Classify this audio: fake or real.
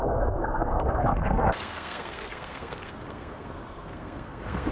fake